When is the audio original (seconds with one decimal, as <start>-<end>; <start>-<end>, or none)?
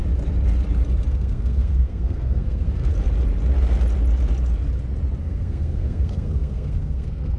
0.0-1.1; 2.9-5.2